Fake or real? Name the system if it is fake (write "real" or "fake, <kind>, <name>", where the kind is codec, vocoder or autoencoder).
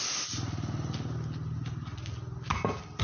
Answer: real